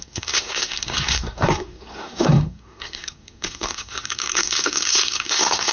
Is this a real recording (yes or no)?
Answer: no